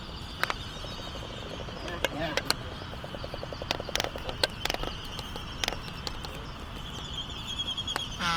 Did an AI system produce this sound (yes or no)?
yes